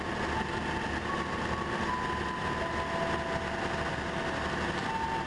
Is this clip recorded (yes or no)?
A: yes